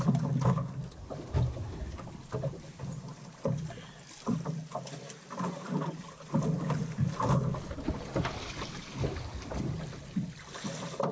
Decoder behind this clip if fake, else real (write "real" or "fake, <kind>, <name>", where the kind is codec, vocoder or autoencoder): real